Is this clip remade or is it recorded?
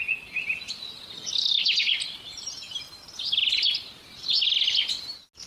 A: recorded